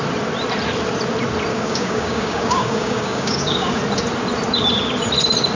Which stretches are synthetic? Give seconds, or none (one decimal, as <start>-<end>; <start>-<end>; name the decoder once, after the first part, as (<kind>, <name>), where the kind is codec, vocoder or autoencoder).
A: 1.5-3.8 (codec, DAC)